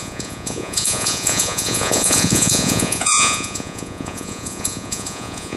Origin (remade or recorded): remade